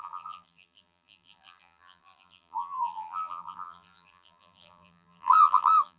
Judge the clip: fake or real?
fake